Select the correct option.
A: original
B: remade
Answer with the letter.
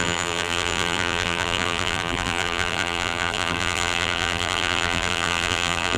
B